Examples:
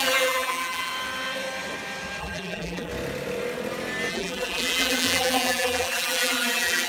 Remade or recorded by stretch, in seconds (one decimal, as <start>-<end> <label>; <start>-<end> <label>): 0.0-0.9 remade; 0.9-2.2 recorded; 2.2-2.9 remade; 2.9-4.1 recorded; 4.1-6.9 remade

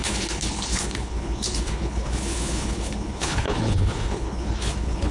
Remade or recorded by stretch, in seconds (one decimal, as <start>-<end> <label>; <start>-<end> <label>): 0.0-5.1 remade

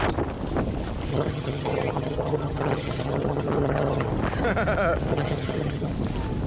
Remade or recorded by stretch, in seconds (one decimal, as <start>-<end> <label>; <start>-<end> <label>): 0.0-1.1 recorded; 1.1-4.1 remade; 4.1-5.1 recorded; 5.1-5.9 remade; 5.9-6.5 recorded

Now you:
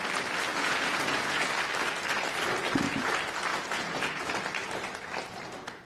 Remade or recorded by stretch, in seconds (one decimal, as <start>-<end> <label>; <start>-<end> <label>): 0.0-0.5 recorded; 0.5-1.5 remade; 1.5-3.5 recorded; 3.5-4.3 remade; 4.3-5.8 recorded